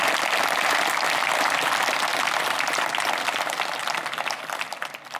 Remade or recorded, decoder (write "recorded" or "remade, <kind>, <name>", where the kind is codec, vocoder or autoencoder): recorded